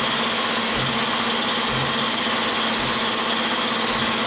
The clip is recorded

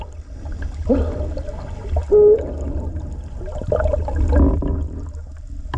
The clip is recorded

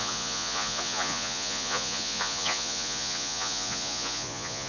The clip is remade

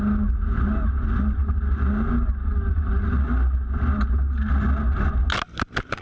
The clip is recorded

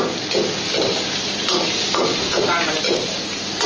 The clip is recorded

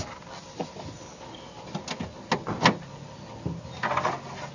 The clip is recorded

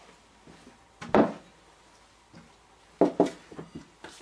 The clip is recorded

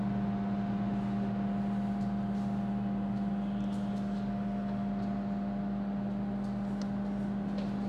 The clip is recorded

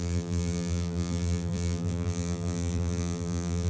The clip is remade